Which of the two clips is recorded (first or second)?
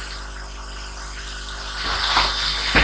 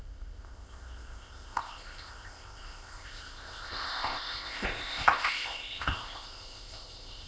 first